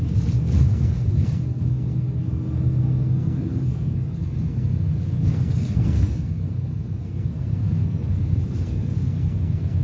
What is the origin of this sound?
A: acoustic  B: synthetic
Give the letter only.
B